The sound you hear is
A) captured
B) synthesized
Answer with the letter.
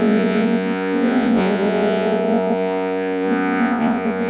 B